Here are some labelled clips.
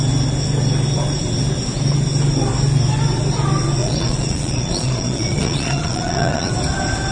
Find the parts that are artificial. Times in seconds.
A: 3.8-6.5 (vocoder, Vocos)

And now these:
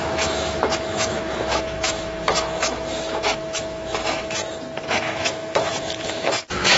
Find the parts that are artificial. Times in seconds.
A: 0.0-4.4 (autoencoder, DAC-VAE); 4.9-6.8

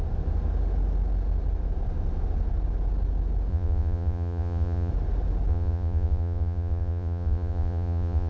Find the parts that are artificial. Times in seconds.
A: 3.5-4.9 (vocoder, Vocos); 5.5-8.3

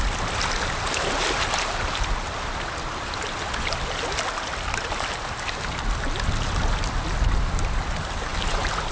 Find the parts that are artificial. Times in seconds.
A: none